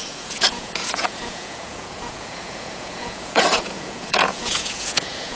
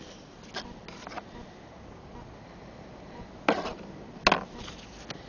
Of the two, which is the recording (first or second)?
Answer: second